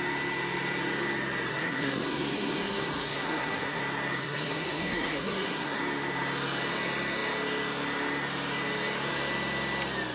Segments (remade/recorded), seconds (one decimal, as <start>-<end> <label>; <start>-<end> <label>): 0.0-1.5 recorded; 1.5-3.8 remade; 3.8-4.2 recorded; 4.2-5.8 remade; 5.8-10.1 recorded